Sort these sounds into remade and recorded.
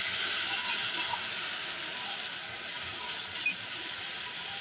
recorded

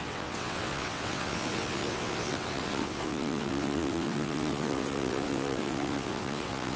remade